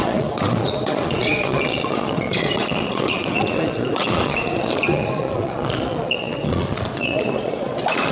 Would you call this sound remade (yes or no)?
yes